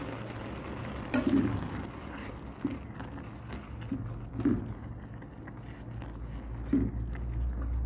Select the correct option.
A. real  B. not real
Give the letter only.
A